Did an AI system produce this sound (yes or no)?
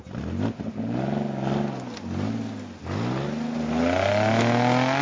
no